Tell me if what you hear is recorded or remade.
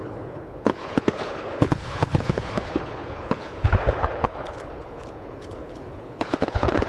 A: remade